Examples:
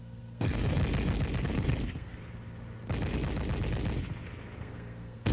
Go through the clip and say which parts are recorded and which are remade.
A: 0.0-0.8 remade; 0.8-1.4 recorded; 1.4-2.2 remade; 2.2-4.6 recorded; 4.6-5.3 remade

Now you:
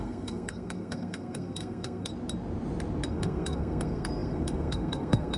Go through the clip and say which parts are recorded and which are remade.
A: 0.0-2.1 remade; 2.1-3.1 recorded; 3.1-5.4 remade

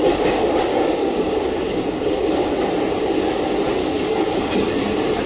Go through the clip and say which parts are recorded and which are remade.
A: 0.0-0.7 recorded; 0.7-2.5 remade; 2.5-3.8 recorded; 3.8-4.7 remade; 4.7-5.3 recorded

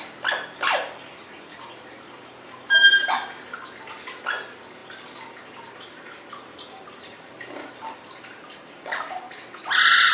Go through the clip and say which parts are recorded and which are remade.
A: 0.0-10.1 recorded

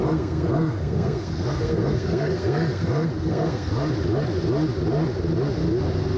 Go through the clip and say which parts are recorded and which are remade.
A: 0.0-3.7 remade; 3.7-6.2 recorded

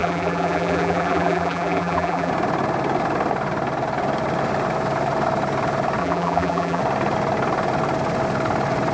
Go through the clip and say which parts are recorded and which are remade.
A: 0.0-2.3 remade; 2.3-6.0 recorded; 6.0-6.8 remade; 6.8-8.9 recorded